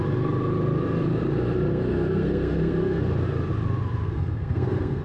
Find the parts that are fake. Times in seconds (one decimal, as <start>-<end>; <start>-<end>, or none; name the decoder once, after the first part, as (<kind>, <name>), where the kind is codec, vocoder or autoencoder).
1.7-3.0 (codec, SNAC); 4.0-5.0